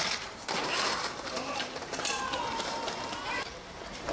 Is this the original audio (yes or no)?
no